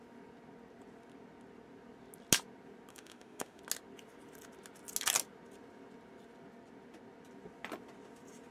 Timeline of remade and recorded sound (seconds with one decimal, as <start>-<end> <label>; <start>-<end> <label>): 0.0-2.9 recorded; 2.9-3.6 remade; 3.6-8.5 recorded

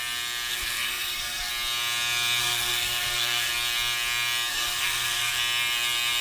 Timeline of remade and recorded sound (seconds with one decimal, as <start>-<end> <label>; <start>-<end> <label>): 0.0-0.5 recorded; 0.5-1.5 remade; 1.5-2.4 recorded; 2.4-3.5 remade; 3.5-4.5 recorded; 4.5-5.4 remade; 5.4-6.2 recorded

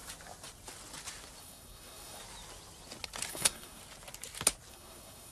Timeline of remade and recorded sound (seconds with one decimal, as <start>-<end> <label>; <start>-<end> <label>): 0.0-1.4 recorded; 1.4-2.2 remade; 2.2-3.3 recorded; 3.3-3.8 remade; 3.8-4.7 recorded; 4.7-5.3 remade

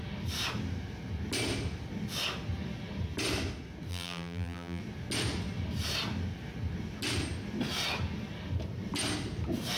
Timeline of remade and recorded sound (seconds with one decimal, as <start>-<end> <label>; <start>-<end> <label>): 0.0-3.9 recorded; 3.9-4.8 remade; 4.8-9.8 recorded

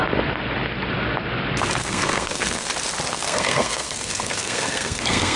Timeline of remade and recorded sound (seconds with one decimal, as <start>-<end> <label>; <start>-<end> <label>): 0.0-1.8 recorded; 1.8-2.7 remade; 2.7-3.1 recorded; 3.1-5.4 remade

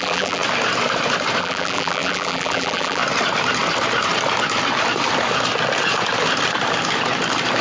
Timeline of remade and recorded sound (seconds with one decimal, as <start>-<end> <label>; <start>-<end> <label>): 0.0-0.4 remade; 0.4-1.4 recorded; 1.4-3.0 remade; 3.0-7.6 recorded

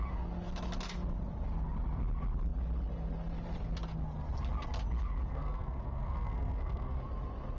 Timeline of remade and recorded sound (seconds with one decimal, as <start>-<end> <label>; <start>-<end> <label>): 0.0-5.3 recorded; 5.3-7.0 remade; 7.0-7.6 recorded